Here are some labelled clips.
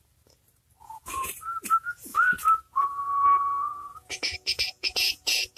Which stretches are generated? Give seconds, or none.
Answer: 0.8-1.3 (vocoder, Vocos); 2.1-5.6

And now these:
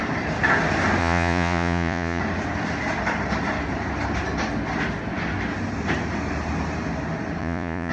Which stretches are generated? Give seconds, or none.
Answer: 1.0-2.2 (vocoder, Vocos); 7.4-7.9